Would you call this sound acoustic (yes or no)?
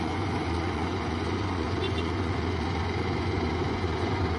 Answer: no